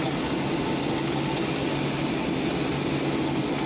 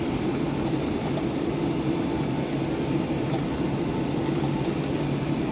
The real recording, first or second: first